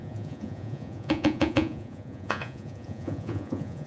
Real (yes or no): no